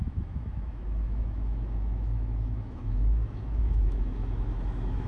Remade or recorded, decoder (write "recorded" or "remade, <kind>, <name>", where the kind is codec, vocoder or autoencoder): remade, autoencoder, DAC-VAE